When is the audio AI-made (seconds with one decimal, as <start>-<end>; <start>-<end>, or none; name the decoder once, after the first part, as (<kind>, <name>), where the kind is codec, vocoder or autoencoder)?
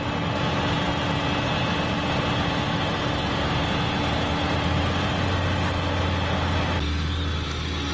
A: none